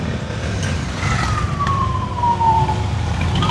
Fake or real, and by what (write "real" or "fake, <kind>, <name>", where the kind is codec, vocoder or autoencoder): fake, vocoder, BigVGAN v2